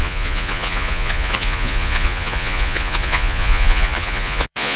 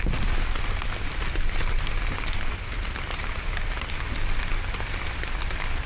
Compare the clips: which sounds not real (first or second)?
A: first